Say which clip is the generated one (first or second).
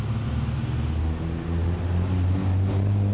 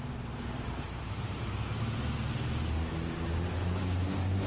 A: second